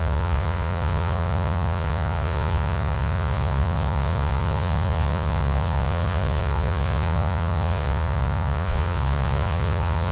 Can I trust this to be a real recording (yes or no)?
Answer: no